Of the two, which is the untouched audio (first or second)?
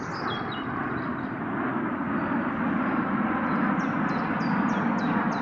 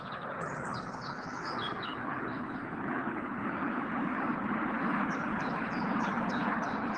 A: first